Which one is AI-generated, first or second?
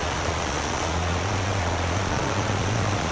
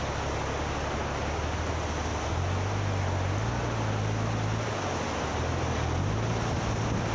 first